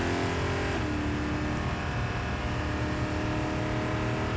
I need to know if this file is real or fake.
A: real